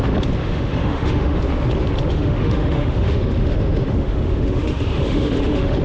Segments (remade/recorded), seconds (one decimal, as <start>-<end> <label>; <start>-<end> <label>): 0.0-0.4 recorded; 0.4-1.4 remade; 1.4-2.1 recorded; 2.1-5.8 remade